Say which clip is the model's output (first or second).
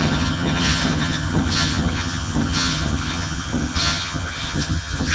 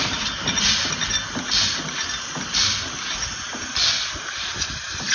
first